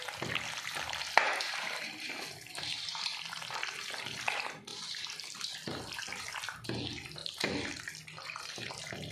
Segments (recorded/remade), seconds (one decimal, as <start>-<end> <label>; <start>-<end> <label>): 0.0-7.2 recorded; 7.2-8.7 remade; 8.7-9.1 recorded